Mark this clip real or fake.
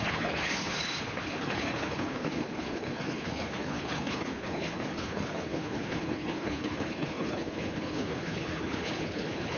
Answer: fake